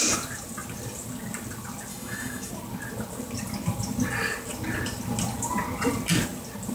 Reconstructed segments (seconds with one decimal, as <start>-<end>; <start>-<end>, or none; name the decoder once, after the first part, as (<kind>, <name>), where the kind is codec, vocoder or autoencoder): 1.9-2.5 (autoencoder, DAC-VAE)